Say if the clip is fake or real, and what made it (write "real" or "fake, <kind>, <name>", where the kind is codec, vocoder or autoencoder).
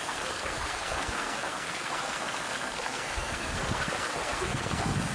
fake, codec, SNAC